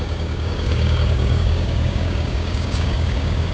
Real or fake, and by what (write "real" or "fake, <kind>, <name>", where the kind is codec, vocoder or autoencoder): fake, codec, DAC